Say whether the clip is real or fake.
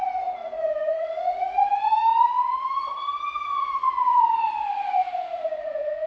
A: fake